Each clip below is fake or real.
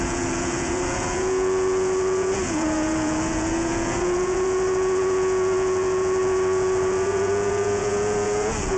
fake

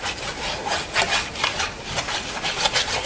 real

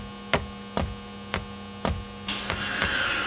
real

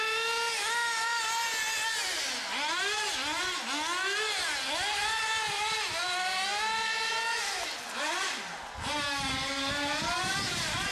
real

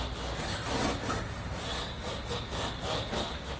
real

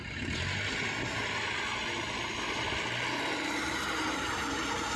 real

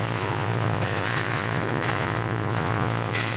fake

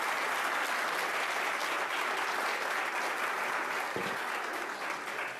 real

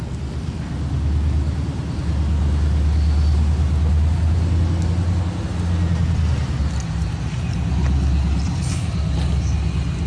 real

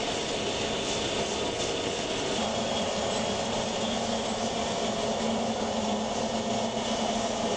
real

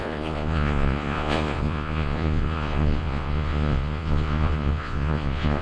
fake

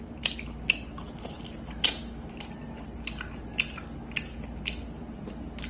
real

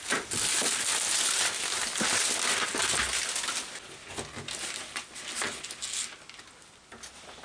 real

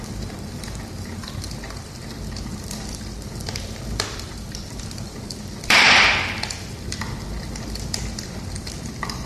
fake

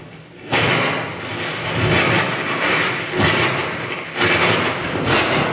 real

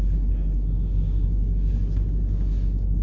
real